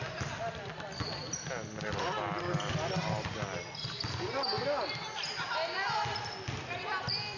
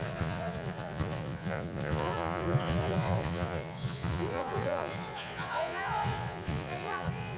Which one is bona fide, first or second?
first